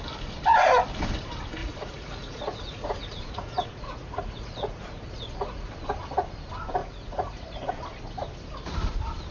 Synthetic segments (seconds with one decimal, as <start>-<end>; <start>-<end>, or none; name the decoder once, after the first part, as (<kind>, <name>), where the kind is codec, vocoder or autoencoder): 1.6-5.7 (vocoder, Vocos); 6.8-7.7